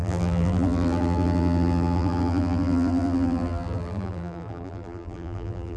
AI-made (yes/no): yes